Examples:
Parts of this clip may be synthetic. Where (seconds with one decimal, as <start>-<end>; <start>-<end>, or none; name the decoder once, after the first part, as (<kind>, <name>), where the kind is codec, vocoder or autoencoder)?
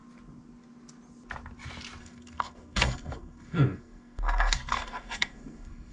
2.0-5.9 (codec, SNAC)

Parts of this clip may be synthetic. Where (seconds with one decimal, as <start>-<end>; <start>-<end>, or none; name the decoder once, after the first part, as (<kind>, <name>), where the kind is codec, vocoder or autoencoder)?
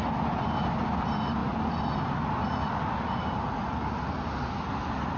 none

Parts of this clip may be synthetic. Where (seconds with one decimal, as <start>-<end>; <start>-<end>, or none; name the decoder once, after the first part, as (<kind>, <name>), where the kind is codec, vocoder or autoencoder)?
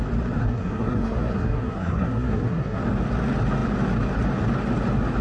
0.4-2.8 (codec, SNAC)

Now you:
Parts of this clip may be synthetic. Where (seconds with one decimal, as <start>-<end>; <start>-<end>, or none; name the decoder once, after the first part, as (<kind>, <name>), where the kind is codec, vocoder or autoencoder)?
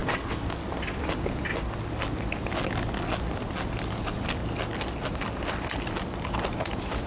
none